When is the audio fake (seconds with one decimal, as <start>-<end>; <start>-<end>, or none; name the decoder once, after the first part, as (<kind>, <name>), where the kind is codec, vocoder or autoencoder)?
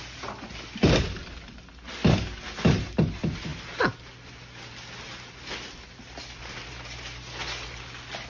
none